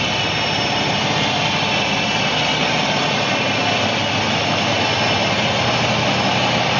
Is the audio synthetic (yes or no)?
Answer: no